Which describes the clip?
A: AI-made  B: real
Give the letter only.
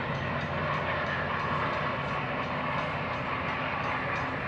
B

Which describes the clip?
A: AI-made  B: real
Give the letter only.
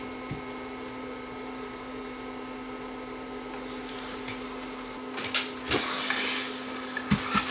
B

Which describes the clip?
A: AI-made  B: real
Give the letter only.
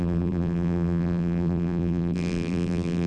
A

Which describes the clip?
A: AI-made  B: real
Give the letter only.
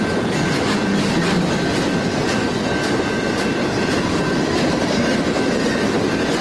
B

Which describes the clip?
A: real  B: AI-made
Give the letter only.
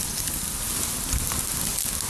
A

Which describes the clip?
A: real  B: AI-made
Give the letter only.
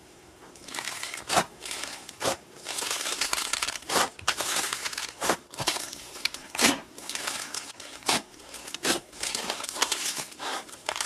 B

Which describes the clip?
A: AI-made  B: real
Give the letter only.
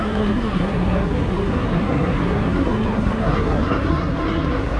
A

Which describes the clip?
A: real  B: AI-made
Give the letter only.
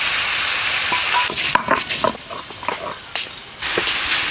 A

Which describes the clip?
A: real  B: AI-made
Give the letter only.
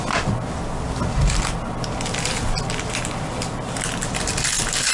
A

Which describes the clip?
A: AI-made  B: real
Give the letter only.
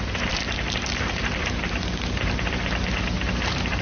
A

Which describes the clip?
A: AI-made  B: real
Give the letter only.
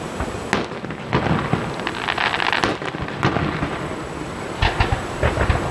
B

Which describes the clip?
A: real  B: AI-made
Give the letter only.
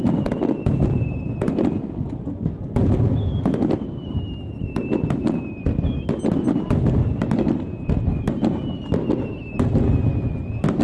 A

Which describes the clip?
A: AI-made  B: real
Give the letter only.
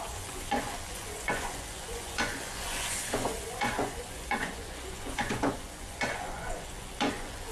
A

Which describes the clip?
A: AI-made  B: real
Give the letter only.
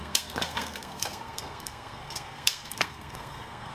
A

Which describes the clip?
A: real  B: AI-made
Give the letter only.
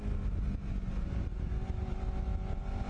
A